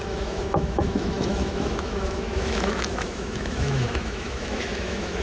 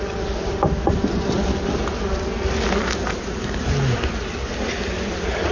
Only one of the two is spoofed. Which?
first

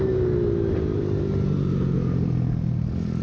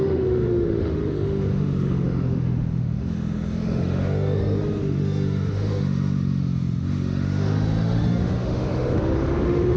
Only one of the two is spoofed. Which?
second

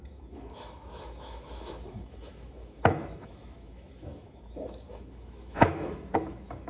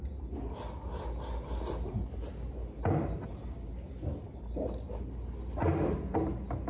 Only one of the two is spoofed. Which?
first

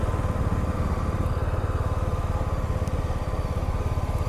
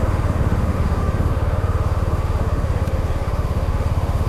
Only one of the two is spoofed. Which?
second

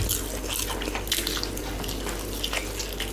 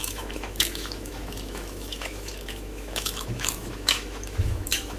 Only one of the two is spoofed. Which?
second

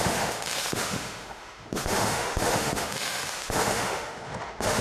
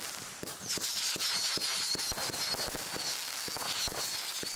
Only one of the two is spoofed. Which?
first